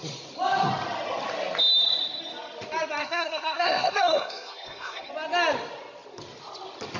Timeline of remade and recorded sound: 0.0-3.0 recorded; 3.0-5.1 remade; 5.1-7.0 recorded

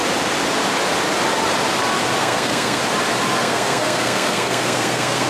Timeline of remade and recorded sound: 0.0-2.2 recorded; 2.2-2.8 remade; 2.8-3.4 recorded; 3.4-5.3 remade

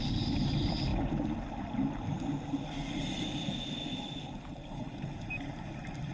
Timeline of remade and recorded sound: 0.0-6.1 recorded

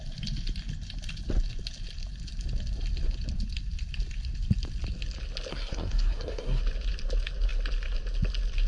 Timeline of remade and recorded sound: 0.0-5.5 recorded; 5.5-6.6 remade; 6.6-8.7 recorded